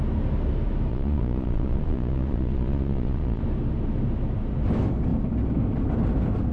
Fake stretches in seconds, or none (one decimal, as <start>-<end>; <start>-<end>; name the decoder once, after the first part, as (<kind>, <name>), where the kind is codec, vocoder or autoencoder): 0.9-3.4 (vocoder, Vocos)